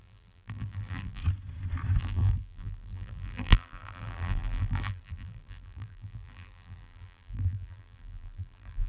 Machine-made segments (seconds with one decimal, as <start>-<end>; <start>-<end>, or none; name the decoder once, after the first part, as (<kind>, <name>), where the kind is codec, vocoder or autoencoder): 0.0-1.2 (vocoder, BigVGAN v2); 2.0-8.9